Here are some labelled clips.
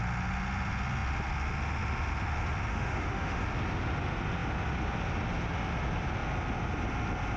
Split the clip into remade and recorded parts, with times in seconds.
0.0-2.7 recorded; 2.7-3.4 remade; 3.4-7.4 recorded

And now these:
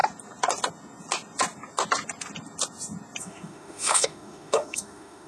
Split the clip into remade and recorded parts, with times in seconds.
0.0-3.2 recorded; 3.2-5.3 remade